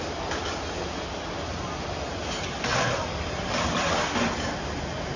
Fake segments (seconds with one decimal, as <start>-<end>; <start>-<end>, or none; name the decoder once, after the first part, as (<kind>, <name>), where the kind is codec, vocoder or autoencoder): 2.7-3.9 (vocoder, BigVGAN v2)